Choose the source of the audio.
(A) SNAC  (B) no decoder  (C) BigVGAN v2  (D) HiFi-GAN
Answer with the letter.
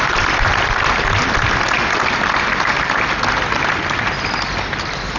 B